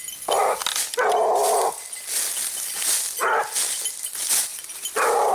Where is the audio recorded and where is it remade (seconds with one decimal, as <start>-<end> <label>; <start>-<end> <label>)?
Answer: 0.0-4.5 recorded; 4.5-5.3 remade